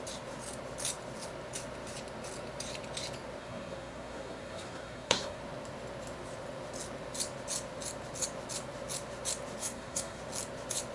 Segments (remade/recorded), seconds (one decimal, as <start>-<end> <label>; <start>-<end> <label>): 0.0-3.4 recorded; 3.4-5.4 remade; 5.4-9.6 recorded; 9.6-10.2 remade; 10.2-10.9 recorded